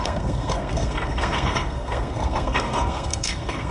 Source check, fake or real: fake